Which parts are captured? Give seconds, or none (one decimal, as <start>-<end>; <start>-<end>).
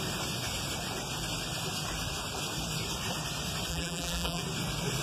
0.0-3.7; 4.4-5.0